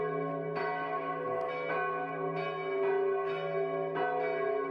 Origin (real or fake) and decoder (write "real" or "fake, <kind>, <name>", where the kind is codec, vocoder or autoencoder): real